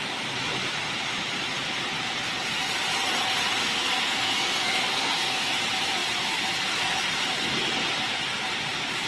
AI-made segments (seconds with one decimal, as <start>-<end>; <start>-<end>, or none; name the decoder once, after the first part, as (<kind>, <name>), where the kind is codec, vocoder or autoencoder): 3.6-5.5 (codec, SNAC)